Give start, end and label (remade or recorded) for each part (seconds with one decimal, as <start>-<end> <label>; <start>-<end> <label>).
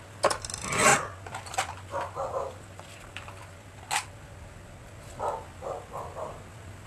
0.0-6.9 recorded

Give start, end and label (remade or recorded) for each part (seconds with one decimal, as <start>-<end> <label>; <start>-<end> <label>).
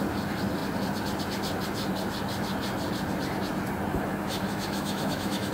0.0-3.9 recorded; 3.9-5.5 remade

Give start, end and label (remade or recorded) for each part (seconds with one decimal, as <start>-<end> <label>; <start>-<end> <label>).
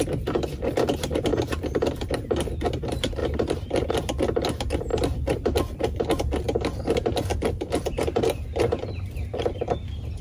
0.0-1.3 recorded; 1.3-2.1 remade; 2.1-3.2 recorded; 3.2-3.9 remade; 3.9-4.9 recorded; 4.9-6.0 remade; 6.0-7.3 recorded; 7.3-9.6 remade; 9.6-10.2 recorded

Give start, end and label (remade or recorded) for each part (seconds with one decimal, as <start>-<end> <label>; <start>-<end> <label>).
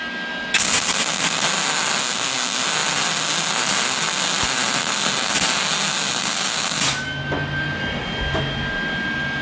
0.0-9.4 recorded